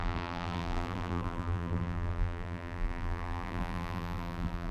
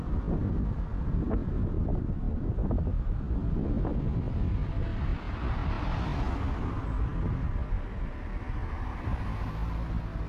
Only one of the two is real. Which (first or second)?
second